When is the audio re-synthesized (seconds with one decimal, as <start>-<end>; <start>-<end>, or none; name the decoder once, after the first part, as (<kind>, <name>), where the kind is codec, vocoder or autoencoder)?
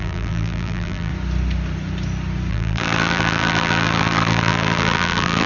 0.0-1.1 (vocoder, BigVGAN v2); 2.5-5.5